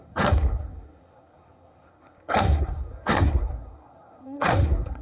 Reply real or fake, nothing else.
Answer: fake